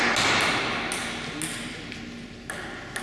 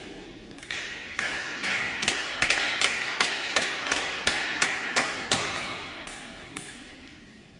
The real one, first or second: first